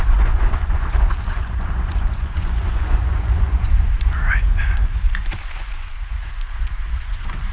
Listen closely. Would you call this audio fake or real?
fake